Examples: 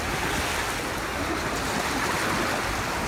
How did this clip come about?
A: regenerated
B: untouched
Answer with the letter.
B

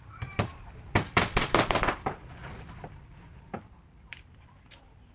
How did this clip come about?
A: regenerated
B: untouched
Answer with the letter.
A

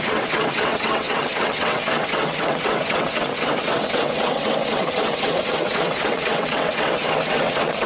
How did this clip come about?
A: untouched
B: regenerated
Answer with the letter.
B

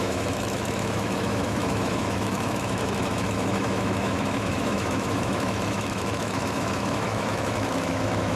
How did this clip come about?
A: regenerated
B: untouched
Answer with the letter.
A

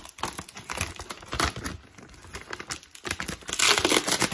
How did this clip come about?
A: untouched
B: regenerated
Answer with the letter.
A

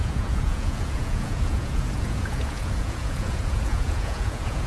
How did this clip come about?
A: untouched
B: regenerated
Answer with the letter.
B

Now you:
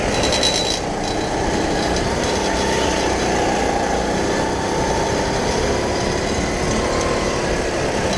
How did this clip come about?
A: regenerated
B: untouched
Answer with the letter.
B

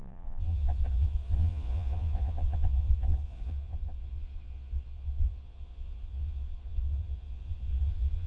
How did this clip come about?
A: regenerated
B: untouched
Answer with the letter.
A